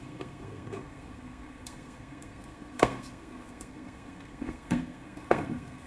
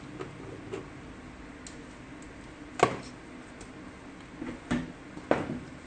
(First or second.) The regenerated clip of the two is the first